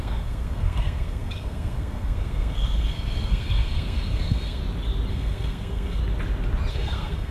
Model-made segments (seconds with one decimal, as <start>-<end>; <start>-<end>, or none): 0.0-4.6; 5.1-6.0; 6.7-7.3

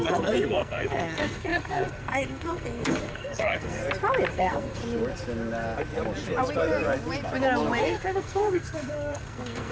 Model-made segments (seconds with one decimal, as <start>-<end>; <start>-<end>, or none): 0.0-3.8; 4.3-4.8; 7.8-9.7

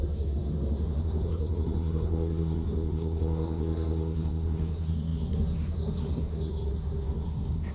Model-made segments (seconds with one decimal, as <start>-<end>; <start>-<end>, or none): 0.0-7.7

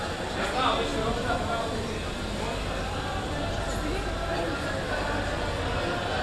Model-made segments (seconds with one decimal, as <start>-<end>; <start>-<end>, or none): none

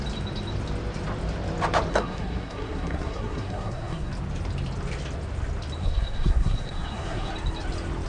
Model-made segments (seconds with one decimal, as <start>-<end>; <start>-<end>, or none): 1.9-4.1; 5.8-7.3

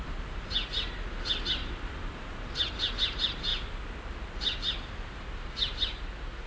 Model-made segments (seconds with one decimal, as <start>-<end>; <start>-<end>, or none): none